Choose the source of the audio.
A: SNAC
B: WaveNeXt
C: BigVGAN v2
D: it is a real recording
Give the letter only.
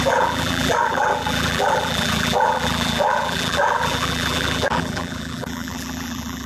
C